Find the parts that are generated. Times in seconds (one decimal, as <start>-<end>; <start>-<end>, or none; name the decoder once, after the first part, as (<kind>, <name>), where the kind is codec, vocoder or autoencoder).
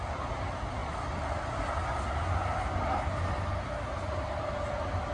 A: none